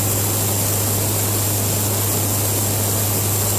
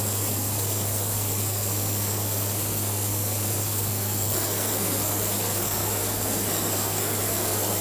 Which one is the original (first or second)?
first